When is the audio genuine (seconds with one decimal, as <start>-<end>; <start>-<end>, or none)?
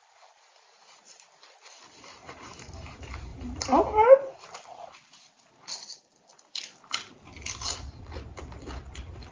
0.0-9.3